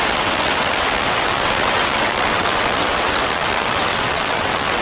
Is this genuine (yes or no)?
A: no